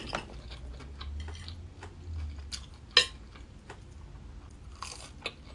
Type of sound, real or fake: real